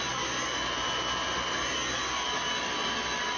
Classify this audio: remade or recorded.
recorded